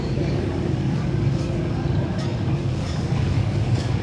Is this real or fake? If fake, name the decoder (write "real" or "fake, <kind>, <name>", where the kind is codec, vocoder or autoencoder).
fake, codec, DAC